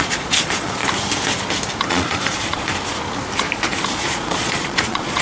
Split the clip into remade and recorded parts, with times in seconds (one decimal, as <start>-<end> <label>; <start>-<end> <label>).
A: 0.0-0.8 remade; 0.8-1.9 recorded; 1.9-2.6 remade; 2.6-3.9 recorded; 3.9-5.2 remade